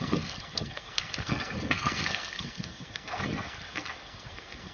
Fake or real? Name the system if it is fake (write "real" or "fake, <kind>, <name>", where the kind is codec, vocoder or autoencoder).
fake, codec, SNAC